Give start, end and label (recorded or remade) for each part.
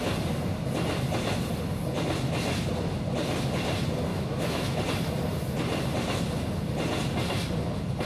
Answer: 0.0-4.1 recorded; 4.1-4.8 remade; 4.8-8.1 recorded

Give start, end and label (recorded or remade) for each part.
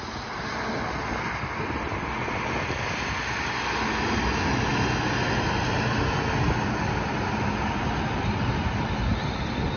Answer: 0.0-9.8 recorded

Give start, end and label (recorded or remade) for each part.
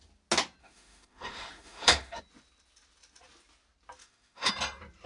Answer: 0.0-0.6 recorded; 0.6-2.2 remade; 2.2-4.0 recorded; 4.0-4.5 remade; 4.5-5.1 recorded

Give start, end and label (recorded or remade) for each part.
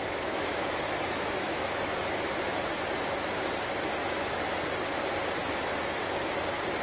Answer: 0.0-2.0 remade; 2.0-4.0 recorded; 4.0-4.6 remade; 4.6-5.4 recorded; 5.4-6.0 remade; 6.0-6.8 recorded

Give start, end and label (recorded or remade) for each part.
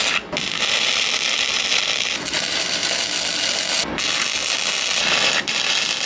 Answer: 0.0-6.1 recorded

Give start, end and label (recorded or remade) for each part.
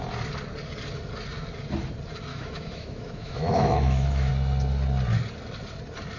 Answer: 0.0-2.3 recorded; 2.3-4.3 remade; 4.3-6.2 recorded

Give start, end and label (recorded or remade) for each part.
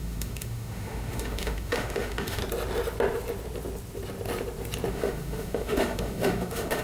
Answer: 0.0-2.4 remade; 2.4-4.9 recorded; 4.9-6.8 remade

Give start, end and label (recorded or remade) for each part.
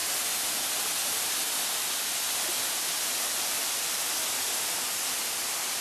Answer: 0.0-5.8 recorded